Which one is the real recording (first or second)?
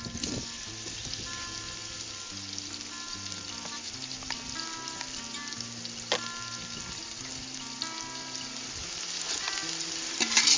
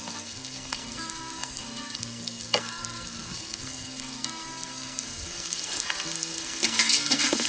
first